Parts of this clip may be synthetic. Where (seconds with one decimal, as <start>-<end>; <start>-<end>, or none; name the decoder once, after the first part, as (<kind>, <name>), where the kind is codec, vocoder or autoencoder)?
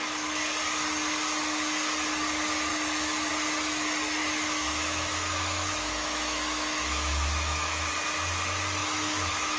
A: 2.7-3.3 (autoencoder, DAC-VAE); 4.2-7.9; 8.8-9.6